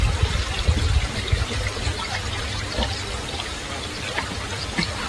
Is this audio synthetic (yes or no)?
no